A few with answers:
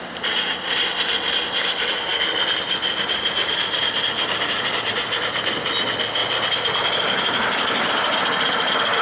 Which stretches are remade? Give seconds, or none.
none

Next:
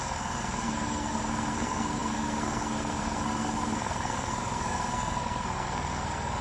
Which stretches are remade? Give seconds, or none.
0.0-6.4 (codec, SNAC)